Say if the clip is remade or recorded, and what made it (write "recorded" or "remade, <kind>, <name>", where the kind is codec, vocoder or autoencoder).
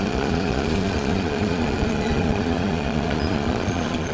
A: remade, vocoder, Vocos